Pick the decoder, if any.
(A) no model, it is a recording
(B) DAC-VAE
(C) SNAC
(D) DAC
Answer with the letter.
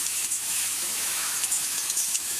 B